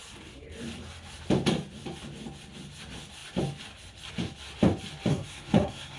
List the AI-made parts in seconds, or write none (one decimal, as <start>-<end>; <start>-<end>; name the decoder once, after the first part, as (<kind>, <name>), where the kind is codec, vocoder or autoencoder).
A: 5.1-6.0 (codec, SNAC)